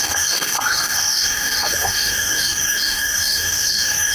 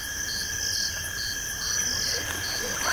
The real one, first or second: second